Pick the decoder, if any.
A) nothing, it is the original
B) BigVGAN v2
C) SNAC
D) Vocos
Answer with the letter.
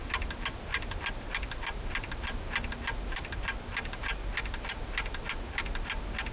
A